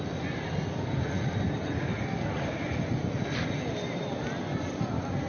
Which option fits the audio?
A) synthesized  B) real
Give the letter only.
B